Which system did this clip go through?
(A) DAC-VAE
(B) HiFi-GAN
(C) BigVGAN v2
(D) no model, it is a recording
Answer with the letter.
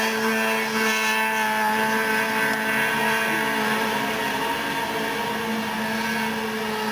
D